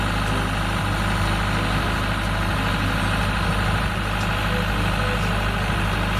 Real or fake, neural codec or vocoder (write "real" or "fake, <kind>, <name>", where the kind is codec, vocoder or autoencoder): real